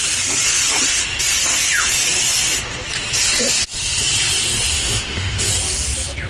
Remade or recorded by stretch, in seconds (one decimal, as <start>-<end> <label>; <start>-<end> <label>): 0.0-4.7 recorded; 4.7-5.5 remade; 5.5-6.3 recorded